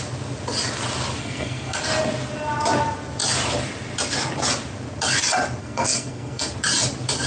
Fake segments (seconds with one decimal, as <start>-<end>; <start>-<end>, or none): 1.2-1.8; 5.6-6.5